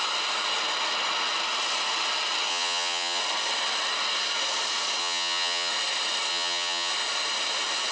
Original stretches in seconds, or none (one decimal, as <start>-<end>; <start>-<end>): 0.0-2.5; 3.2-5.0; 5.7-6.3; 6.9-7.9